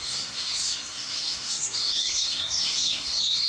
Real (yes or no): no